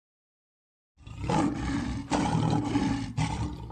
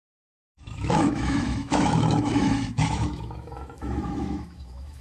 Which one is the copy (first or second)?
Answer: second